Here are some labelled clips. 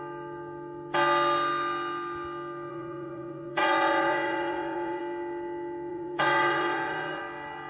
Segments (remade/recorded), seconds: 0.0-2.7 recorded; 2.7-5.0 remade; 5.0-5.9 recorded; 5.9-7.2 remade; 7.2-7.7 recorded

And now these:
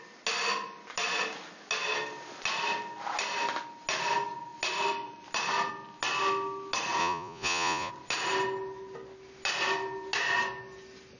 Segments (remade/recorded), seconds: 0.0-7.0 recorded; 7.0-7.9 remade; 7.9-11.2 recorded

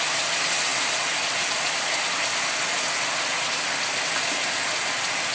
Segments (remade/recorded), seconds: 0.0-5.3 recorded